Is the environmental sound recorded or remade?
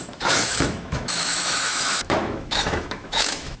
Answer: remade